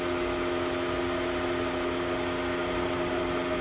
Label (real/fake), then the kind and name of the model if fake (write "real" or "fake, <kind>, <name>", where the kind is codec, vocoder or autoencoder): real